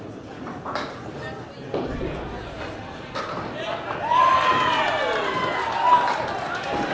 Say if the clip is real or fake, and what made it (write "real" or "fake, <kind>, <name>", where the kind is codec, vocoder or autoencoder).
real